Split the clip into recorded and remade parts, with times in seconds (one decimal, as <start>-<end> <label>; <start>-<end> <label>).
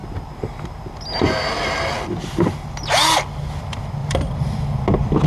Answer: 0.0-4.0 recorded; 4.0-4.8 remade; 4.8-5.3 recorded